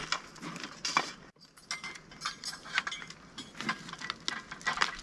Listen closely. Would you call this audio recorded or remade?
recorded